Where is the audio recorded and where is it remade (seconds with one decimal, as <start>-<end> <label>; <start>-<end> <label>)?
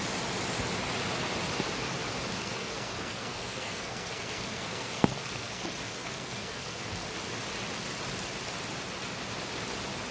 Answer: 0.0-2.4 recorded; 2.4-6.8 remade; 6.8-10.1 recorded